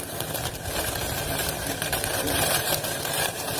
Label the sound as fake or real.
fake